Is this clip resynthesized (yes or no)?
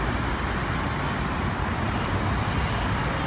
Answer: no